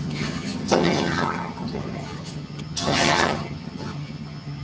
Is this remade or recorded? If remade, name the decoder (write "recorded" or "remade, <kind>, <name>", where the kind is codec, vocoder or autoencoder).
remade, vocoder, HiFi-GAN